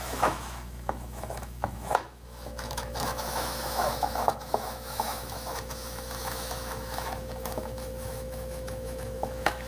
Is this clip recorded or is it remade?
remade